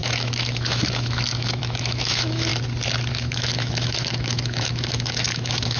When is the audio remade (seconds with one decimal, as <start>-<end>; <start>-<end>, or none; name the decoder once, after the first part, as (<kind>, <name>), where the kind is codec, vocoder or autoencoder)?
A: 0.0-2.5 (autoencoder, DAC-VAE); 3.1-5.8